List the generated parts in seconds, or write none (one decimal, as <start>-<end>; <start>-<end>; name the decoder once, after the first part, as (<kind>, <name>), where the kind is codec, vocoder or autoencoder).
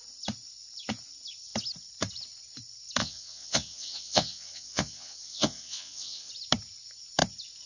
3.0-6.3 (vocoder, WaveNeXt)